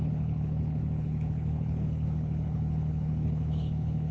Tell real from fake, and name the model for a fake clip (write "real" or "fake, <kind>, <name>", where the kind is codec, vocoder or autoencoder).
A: fake, codec, HILCodec